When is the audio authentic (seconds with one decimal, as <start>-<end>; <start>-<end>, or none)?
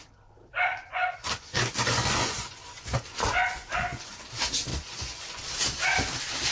0.0-0.7; 4.3-4.7; 5.4-6.5